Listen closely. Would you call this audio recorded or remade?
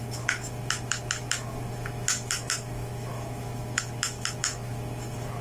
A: remade